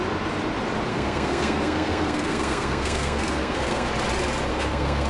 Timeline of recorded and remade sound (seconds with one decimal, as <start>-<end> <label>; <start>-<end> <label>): 0.0-0.9 recorded; 0.9-3.9 remade; 3.9-4.5 recorded; 4.5-5.1 remade